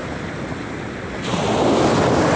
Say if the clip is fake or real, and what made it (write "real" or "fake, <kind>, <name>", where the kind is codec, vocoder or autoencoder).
real